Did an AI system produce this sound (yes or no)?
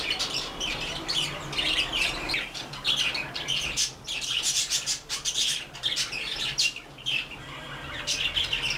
yes